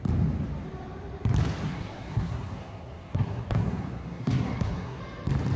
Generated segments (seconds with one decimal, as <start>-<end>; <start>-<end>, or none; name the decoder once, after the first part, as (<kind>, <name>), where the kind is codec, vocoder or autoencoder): 1.6-5.0 (codec, SNAC)